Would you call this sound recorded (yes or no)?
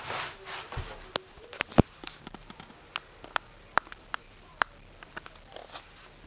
yes